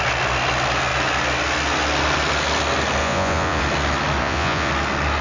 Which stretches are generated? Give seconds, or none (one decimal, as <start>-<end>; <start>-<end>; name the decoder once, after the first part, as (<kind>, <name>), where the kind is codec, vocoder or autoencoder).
3.0-3.6 (vocoder, Vocos); 4.2-4.7